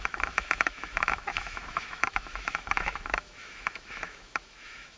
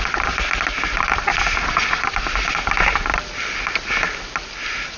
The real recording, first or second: second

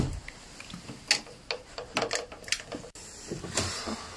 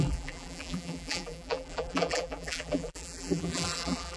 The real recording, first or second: first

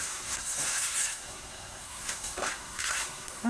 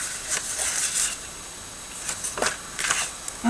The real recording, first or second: second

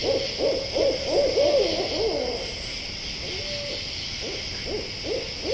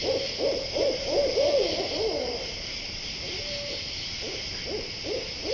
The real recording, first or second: first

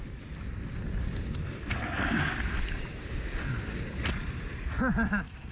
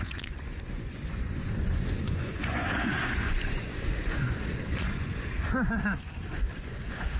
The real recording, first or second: first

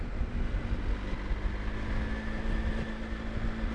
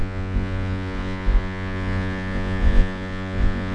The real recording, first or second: first